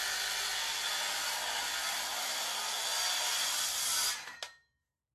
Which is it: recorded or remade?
recorded